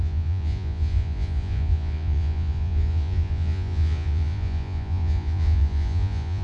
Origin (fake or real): fake